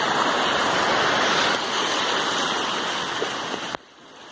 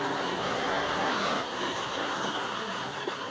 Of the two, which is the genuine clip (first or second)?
first